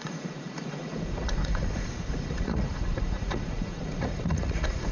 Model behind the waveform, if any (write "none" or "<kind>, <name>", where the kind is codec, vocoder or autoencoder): vocoder, Vocos